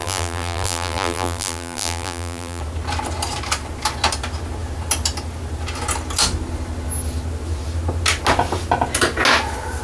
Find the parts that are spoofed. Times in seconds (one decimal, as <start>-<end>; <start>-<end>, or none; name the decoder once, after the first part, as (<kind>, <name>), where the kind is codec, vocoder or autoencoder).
0.0-2.6 (vocoder, BigVGAN v2)